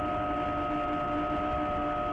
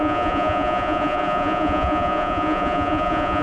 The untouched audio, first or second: first